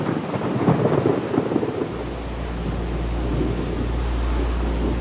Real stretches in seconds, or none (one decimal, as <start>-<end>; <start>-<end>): 0.0-5.0